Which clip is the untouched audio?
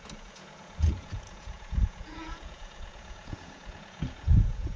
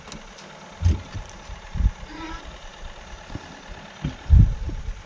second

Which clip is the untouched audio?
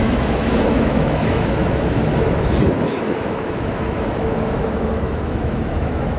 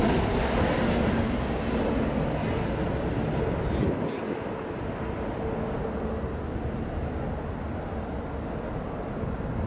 second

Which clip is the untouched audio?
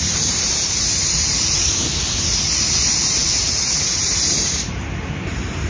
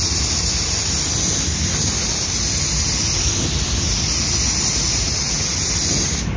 second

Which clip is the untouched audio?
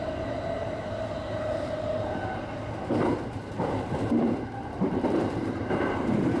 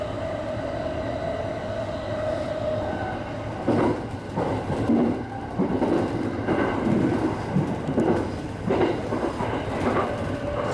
second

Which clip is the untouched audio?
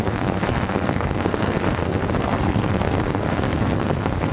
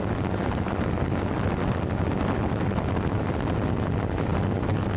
second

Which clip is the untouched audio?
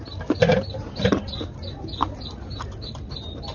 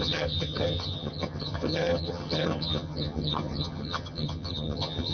first